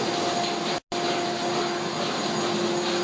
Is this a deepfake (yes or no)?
no